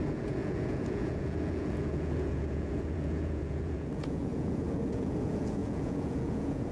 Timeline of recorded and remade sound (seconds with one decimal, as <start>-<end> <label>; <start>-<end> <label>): 0.0-6.7 remade